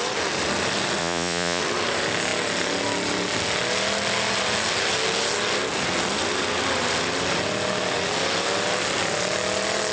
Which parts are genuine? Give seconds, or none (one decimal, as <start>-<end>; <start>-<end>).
0.0-1.0; 1.6-9.9